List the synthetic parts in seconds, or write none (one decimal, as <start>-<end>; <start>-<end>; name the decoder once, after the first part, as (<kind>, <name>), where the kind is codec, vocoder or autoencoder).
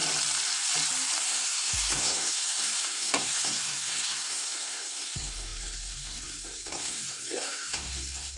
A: 1.2-8.4 (codec, SNAC)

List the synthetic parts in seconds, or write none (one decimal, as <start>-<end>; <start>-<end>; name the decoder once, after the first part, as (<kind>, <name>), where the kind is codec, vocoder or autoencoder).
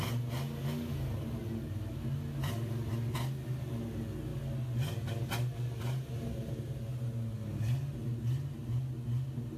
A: none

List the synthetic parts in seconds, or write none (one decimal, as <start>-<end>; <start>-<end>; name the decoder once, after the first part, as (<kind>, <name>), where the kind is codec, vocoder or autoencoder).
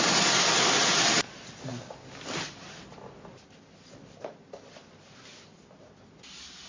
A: none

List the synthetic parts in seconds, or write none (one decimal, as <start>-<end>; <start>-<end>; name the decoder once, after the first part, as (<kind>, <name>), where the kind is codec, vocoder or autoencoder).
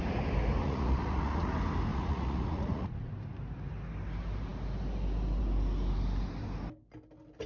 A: 0.6-1.5 (vocoder, Vocos); 1.9-3.1